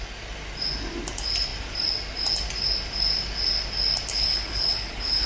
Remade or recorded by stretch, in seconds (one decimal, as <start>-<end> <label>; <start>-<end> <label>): 0.0-4.1 recorded; 4.1-5.3 remade